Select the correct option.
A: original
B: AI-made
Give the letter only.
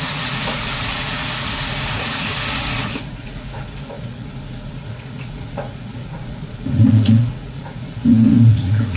B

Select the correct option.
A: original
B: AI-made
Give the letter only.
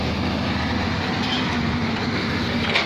A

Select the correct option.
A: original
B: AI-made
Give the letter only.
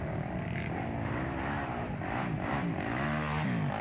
A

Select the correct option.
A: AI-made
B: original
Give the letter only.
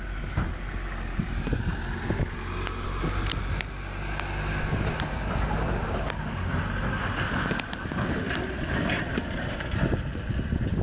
B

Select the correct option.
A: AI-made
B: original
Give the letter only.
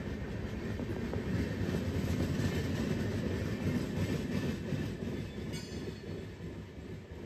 B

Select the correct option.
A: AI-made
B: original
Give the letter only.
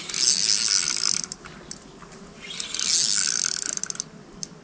B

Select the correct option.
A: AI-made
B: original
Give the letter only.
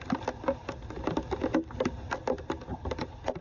B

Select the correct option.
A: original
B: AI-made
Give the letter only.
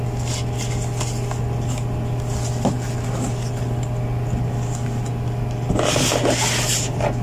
A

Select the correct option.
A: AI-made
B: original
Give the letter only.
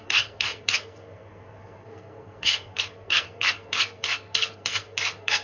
A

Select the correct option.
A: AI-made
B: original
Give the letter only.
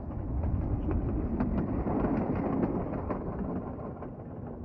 B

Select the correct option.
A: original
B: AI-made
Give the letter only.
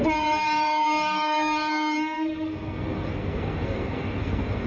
B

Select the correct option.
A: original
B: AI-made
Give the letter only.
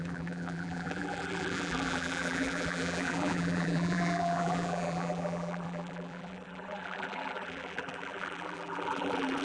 B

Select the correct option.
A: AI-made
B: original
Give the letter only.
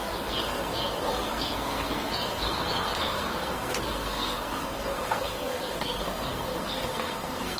A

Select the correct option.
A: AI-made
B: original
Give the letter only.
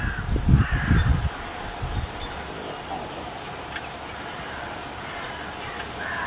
B